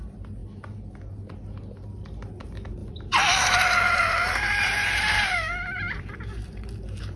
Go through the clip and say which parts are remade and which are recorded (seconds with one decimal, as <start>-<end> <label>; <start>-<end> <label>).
0.0-2.8 recorded; 2.8-7.2 remade